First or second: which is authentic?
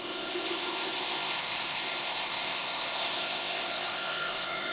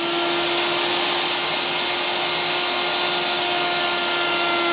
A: second